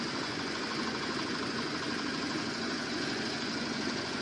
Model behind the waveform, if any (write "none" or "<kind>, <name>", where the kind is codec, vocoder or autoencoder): vocoder, Vocos